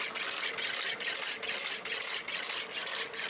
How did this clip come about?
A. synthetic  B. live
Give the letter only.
B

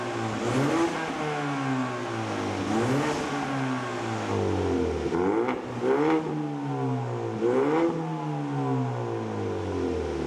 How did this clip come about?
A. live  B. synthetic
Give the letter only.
A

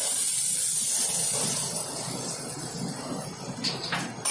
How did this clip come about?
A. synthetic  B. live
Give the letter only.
B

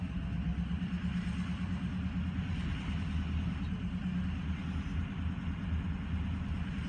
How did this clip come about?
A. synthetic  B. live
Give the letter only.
B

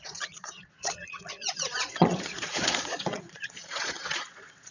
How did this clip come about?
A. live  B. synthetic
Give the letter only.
B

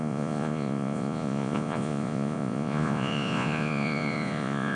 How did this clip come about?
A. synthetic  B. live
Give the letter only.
A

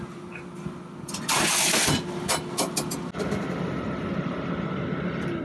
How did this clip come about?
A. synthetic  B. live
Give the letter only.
B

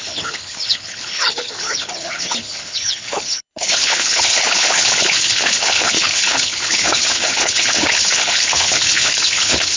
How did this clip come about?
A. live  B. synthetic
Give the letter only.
B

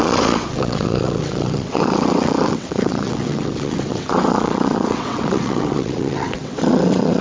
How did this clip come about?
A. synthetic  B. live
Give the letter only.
A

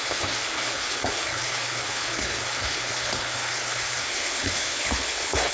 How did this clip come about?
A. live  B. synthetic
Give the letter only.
B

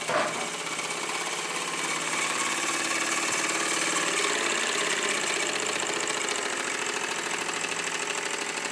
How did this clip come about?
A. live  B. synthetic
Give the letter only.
A